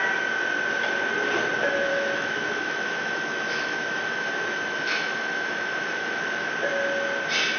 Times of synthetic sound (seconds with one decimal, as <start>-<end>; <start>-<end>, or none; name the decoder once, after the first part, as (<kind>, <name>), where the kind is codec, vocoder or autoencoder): 1.9-6.5 (autoencoder, DAC-VAE)